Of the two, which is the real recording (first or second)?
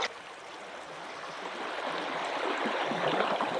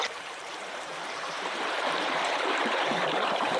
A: first